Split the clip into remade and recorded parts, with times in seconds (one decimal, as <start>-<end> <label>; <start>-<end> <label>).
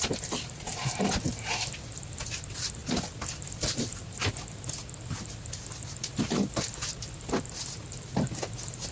0.0-8.9 recorded